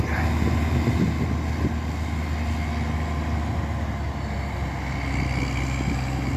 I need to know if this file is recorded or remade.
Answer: recorded